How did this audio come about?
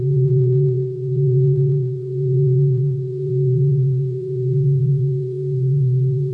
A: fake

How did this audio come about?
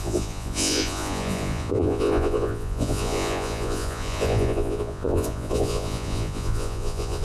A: fake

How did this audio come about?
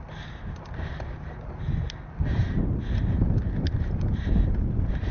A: real